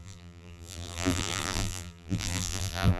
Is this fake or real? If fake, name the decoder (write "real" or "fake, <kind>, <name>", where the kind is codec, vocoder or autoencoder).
fake, vocoder, BigVGAN v2